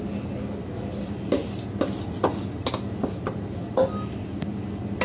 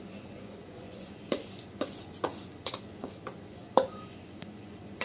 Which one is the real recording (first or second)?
first